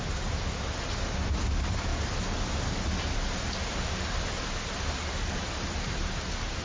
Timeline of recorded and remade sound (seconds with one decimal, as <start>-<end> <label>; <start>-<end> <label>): 0.0-6.6 recorded